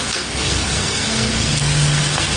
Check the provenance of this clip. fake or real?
fake